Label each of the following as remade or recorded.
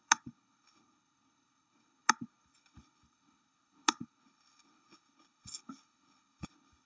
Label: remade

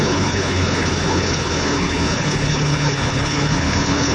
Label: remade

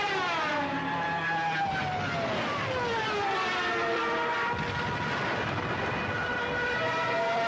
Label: recorded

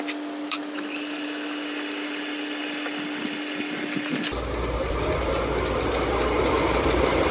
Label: recorded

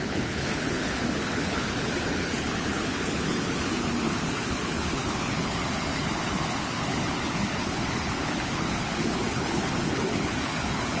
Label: remade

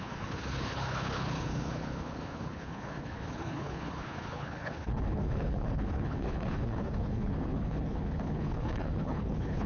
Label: remade